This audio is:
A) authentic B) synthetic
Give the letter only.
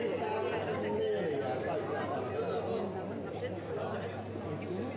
A